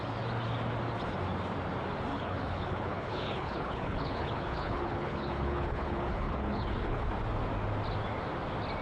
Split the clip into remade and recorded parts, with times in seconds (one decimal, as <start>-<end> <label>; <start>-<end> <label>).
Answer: 0.0-2.1 recorded; 2.1-7.1 remade; 7.1-8.8 recorded